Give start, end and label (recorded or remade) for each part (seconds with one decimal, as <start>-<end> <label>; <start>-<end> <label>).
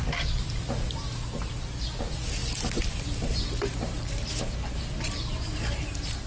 0.0-6.3 recorded